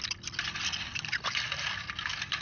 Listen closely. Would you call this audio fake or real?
real